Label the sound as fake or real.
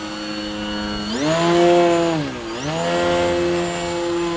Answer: real